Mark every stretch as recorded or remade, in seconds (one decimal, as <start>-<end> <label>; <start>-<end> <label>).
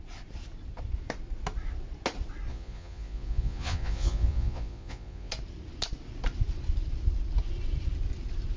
0.0-2.5 recorded; 2.5-5.3 remade; 5.3-8.6 recorded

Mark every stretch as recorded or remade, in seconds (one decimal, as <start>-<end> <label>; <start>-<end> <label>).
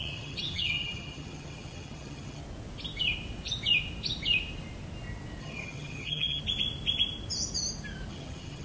0.0-2.4 remade; 2.4-5.4 recorded; 5.4-6.4 remade; 6.4-8.1 recorded; 8.1-8.6 remade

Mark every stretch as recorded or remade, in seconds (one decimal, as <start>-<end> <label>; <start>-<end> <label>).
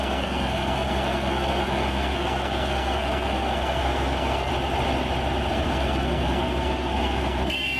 0.0-4.5 remade; 4.5-5.5 recorded; 5.5-7.8 remade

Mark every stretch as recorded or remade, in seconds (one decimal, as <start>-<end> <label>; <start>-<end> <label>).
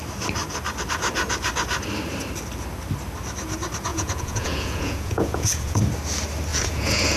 0.0-3.9 recorded; 3.9-5.8 remade; 5.8-6.5 recorded; 6.5-7.2 remade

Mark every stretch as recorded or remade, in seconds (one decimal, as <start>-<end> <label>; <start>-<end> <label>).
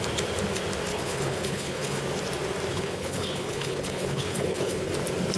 0.0-0.9 recorded; 0.9-2.0 remade; 2.0-2.7 recorded; 2.7-4.9 remade; 4.9-5.4 recorded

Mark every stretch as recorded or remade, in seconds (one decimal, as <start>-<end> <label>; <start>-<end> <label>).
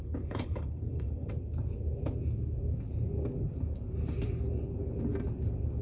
0.0-1.3 remade; 1.3-5.8 recorded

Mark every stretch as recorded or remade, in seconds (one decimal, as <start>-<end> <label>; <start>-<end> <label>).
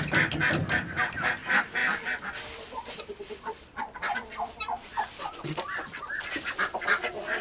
0.0-0.6 recorded; 0.6-1.3 remade; 1.3-1.8 recorded; 1.8-5.2 remade; 5.2-7.4 recorded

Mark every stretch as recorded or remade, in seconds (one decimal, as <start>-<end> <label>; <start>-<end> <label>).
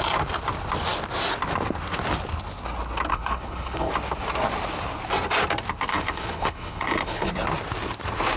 0.0-3.1 recorded; 3.1-3.9 remade; 3.9-5.9 recorded; 5.9-7.3 remade; 7.3-8.4 recorded